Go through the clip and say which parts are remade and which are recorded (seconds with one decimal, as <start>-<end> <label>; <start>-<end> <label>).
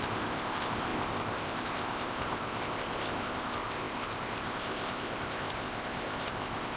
0.0-6.8 remade